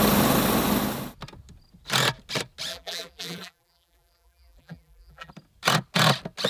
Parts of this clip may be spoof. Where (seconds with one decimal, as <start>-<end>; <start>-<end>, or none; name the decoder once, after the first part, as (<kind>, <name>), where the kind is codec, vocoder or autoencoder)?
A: 2.7-5.3 (vocoder, BigVGAN v2)

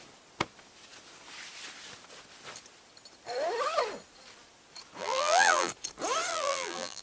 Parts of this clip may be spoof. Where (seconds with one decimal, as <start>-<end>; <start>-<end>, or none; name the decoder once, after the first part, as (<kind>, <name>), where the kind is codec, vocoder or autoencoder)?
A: 5.0-5.7 (vocoder, BigVGAN v2); 6.3-7.0

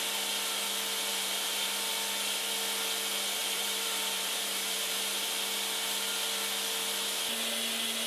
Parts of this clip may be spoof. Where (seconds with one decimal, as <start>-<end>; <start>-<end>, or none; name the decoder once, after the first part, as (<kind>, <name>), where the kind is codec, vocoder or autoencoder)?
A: 1.1-1.9 (vocoder, BigVGAN v2); 3.4-5.2

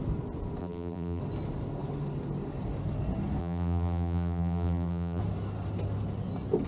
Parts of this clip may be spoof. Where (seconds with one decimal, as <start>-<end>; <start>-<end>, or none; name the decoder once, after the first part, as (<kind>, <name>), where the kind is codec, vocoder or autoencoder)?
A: 0.6-1.2 (vocoder, BigVGAN v2); 3.4-5.2

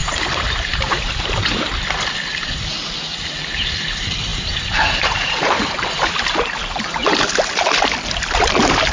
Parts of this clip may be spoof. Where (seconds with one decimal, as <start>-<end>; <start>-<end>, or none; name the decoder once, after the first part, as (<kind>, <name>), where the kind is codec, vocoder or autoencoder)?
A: 0.0-1.7 (vocoder, BigVGAN v2); 4.3-6.9

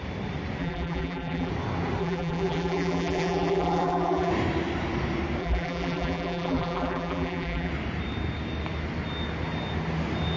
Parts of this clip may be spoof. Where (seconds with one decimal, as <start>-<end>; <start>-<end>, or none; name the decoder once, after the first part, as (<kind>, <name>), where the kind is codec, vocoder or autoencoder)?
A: 0.6-1.5 (vocoder, BigVGAN v2); 2.0-4.3; 5.4-7.7

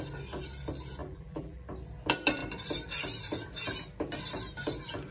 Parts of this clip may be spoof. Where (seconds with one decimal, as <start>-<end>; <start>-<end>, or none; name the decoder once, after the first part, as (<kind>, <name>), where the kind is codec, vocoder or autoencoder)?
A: 1.0-1.6 (vocoder, BigVGAN v2)